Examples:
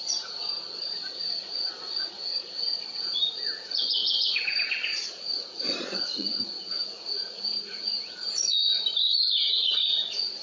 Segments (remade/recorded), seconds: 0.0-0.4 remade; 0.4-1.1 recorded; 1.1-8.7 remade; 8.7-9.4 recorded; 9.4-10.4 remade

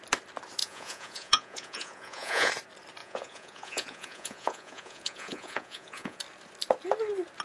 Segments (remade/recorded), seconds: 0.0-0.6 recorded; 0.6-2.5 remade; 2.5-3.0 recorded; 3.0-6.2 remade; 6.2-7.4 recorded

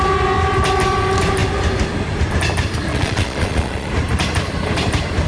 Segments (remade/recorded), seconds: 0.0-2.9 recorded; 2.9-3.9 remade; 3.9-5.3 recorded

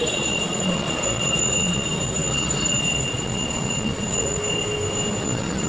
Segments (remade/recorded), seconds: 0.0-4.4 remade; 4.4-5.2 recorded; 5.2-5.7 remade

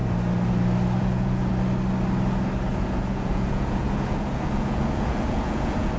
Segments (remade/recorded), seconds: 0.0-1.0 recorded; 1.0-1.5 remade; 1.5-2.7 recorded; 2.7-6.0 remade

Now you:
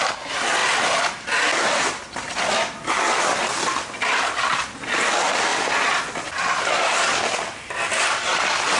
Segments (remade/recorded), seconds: 0.0-8.8 recorded

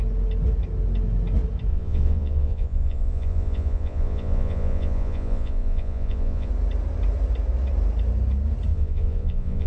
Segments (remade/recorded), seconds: 0.0-1.7 recorded; 1.7-6.5 remade; 6.5-8.7 recorded; 8.7-9.7 remade

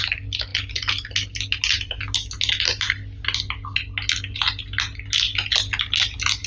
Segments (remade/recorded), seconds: 0.0-6.5 recorded